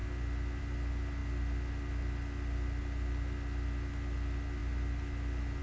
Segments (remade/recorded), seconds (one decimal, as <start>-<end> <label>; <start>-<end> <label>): 0.0-5.6 recorded